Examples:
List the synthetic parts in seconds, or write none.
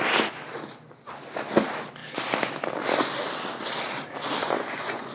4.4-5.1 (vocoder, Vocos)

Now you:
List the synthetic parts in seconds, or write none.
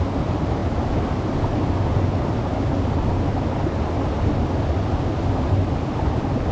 none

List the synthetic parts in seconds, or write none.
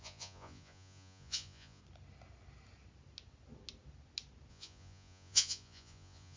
0.0-1.8 (vocoder, Vocos); 4.5-6.4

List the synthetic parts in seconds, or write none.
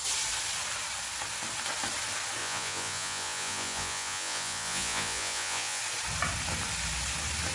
2.4-5.8 (vocoder, Vocos)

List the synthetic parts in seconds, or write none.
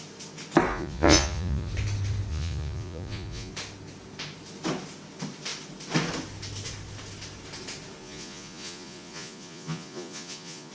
0.7-1.7 (vocoder, Vocos); 2.3-3.5; 8.0-10.7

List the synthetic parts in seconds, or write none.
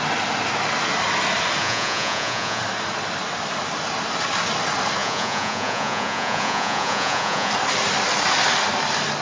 1.6-2.6 (vocoder, Vocos); 5.0-7.5